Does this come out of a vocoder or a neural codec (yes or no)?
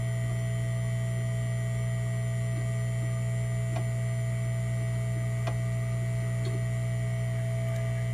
no